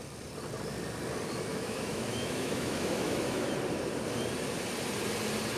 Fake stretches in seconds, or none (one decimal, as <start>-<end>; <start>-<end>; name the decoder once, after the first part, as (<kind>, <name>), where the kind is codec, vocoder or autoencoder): 1.5-3.5 (autoencoder, DAC-VAE)